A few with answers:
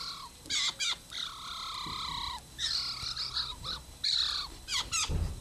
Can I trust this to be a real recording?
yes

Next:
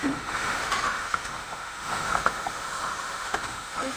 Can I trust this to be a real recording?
no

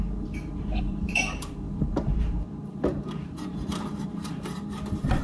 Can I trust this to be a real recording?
no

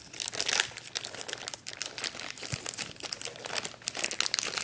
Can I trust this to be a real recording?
yes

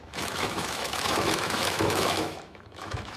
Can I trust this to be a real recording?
no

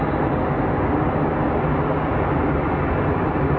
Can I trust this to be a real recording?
yes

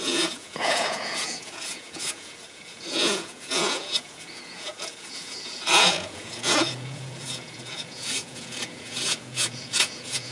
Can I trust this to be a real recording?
no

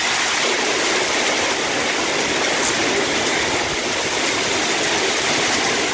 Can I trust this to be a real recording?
yes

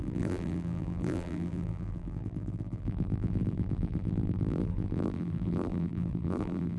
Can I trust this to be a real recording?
no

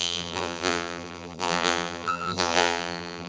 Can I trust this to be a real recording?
no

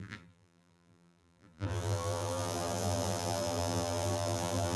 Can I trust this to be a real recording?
no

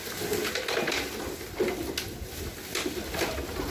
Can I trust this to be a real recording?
yes